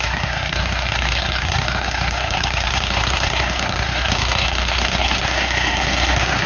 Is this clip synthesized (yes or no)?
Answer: yes